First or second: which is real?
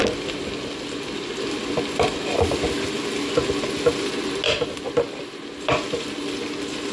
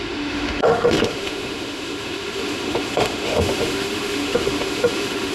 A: first